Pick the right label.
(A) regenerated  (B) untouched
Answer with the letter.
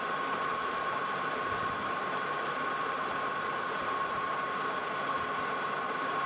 A